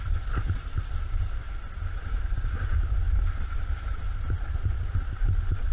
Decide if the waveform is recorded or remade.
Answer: recorded